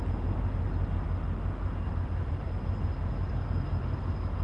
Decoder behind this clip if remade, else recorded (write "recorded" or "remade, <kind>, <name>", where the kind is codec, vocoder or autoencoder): recorded